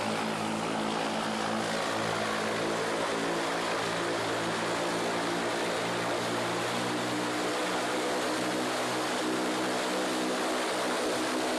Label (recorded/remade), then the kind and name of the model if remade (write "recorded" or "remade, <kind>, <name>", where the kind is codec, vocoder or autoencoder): recorded